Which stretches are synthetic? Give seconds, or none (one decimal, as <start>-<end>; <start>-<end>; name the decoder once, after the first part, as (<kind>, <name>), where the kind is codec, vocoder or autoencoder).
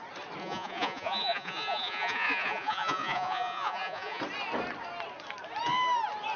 0.4-4.2 (vocoder, Vocos)